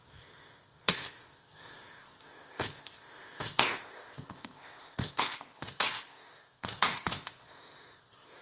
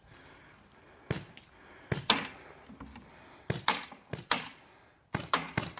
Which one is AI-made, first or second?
first